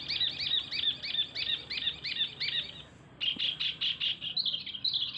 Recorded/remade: recorded